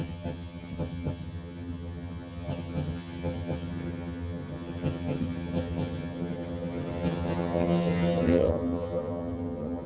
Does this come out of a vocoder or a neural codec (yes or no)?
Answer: yes